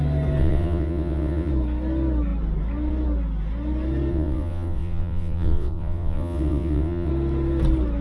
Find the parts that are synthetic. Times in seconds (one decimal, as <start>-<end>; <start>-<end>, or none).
0.4-1.5; 4.1-7.1